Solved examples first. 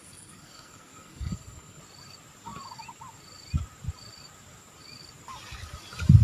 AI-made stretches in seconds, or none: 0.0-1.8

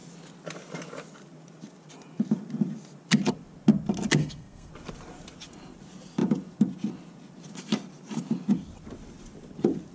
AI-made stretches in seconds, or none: 4.2-4.7

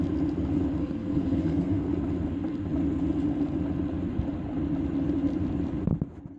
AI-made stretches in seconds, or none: 0.8-1.9

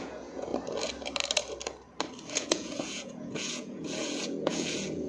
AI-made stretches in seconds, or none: 0.0-0.5; 2.3-5.1

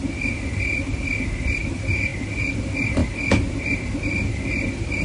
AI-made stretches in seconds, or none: none

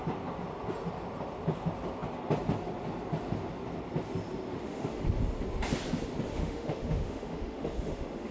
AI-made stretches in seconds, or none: 4.5-5.2; 6.3-8.3

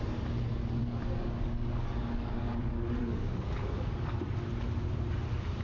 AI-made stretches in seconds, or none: 0.8-4.2

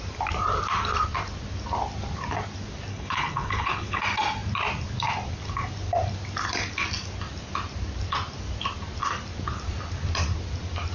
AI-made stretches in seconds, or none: 2.9-4.0